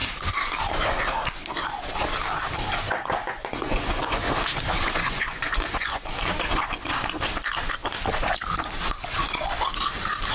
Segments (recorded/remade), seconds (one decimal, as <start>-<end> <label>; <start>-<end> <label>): 0.0-3.2 recorded; 3.2-4.3 remade; 4.3-4.8 recorded; 4.8-6.1 remade; 6.1-10.3 recorded